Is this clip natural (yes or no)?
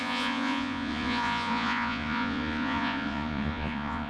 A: no